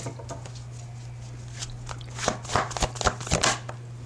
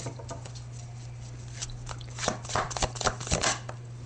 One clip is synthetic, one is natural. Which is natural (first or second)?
first